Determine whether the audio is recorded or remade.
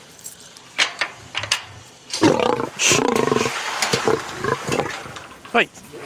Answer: remade